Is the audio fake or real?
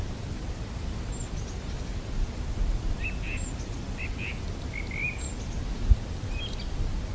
real